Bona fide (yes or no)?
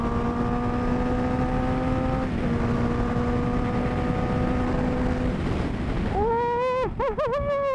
yes